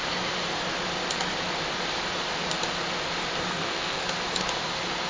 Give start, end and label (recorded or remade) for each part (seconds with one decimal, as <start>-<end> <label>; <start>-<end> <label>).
0.0-3.5 recorded; 3.5-4.0 remade; 4.0-5.1 recorded

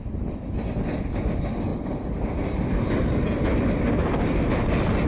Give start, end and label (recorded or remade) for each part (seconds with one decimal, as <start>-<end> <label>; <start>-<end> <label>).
0.0-5.1 recorded

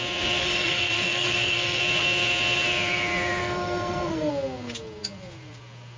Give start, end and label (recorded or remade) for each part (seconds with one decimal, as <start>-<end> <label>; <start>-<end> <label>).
0.0-0.4 recorded; 0.4-1.8 remade; 1.8-3.4 recorded; 3.4-4.3 remade; 4.3-6.0 recorded

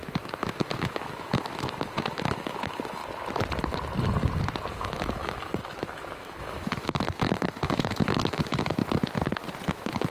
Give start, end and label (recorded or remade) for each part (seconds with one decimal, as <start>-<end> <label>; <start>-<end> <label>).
0.0-3.0 remade; 3.0-4.7 recorded; 4.7-8.8 remade; 8.8-9.7 recorded; 9.7-10.1 remade

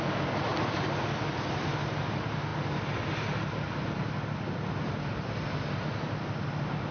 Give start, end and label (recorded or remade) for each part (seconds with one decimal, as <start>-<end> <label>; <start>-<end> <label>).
0.0-6.9 recorded

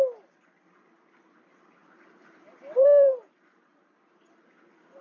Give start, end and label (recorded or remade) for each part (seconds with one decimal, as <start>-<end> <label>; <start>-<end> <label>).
0.0-1.8 recorded; 1.8-3.8 remade; 3.8-5.0 recorded

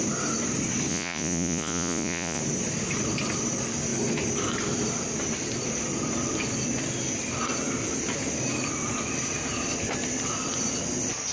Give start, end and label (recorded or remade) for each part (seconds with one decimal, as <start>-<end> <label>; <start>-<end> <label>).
0.0-0.9 recorded; 0.9-2.4 remade; 2.4-11.3 recorded